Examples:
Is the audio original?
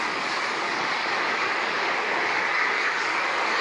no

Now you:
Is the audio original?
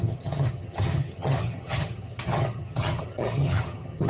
no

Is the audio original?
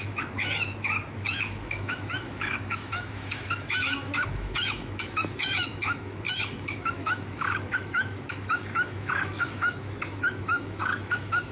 no